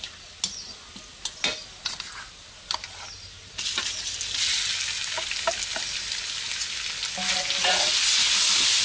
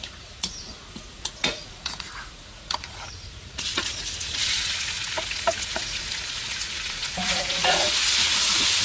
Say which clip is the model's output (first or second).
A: second